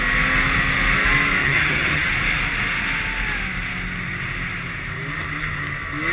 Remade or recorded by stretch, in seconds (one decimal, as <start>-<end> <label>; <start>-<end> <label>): 0.0-1.4 recorded; 1.4-2.1 remade; 2.1-6.1 recorded